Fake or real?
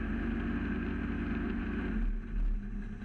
real